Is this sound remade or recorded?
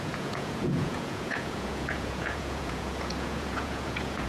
remade